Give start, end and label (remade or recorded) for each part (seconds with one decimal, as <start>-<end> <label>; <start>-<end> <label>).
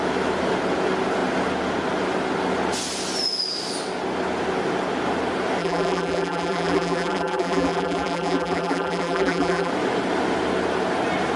0.0-5.6 recorded; 5.6-9.7 remade; 9.7-11.4 recorded